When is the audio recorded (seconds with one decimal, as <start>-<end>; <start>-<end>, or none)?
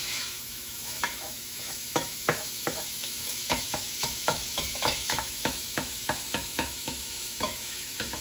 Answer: none